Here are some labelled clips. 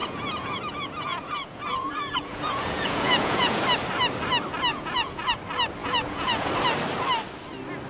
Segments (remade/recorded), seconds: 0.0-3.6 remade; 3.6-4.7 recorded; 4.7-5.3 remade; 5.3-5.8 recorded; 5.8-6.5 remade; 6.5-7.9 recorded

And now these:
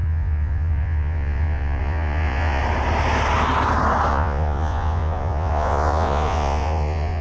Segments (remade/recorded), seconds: 0.0-2.6 remade; 2.6-4.1 recorded; 4.1-7.2 remade

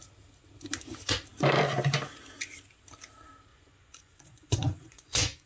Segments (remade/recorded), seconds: 0.0-3.5 recorded; 3.5-5.5 remade

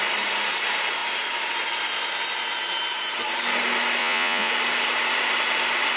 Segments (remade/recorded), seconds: 0.0-4.0 recorded; 4.0-4.5 remade; 4.5-6.0 recorded

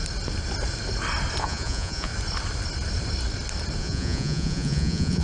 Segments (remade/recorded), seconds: 0.0-1.4 recorded; 1.4-2.1 remade; 2.1-3.8 recorded; 3.8-5.2 remade